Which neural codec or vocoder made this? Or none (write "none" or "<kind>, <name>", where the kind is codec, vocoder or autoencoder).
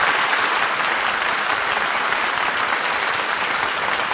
vocoder, BigVGAN v2